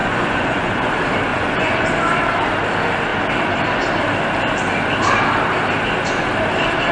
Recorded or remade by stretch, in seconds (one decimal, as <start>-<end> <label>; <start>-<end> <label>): 0.0-0.9 remade; 0.9-1.3 recorded; 1.3-1.9 remade; 1.9-6.9 recorded